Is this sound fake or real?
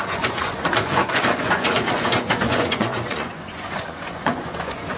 fake